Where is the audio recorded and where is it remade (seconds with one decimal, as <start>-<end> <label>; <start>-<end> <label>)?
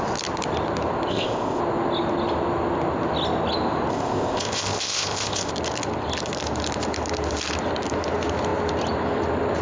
0.0-1.1 recorded; 1.1-1.6 remade; 1.6-3.9 recorded; 3.9-5.5 remade; 5.5-9.6 recorded